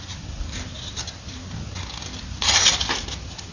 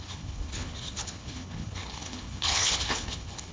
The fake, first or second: second